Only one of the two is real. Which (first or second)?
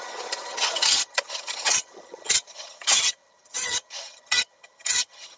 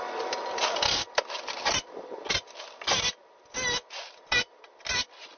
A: second